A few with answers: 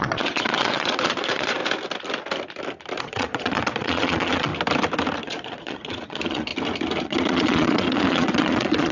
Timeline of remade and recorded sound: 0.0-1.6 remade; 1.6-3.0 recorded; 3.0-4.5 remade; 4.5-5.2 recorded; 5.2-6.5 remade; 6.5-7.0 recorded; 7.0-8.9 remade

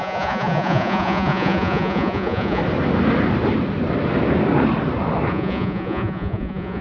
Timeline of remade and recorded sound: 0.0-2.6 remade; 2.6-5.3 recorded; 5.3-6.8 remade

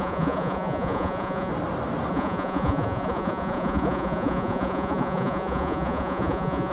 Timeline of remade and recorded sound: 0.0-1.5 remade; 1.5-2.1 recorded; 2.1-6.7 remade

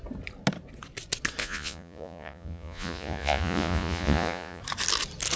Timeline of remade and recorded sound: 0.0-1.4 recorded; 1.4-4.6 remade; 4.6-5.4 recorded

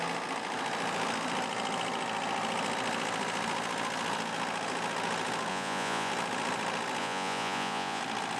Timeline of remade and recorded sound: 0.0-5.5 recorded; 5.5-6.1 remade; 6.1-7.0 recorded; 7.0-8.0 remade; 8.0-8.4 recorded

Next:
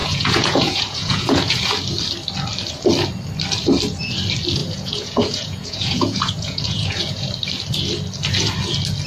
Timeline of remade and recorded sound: 0.0-1.7 remade; 1.7-4.6 recorded; 4.6-7.3 remade; 7.3-9.1 recorded